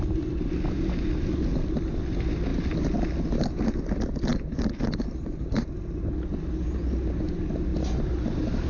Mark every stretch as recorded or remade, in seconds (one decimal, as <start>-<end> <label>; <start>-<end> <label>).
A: 0.0-8.7 recorded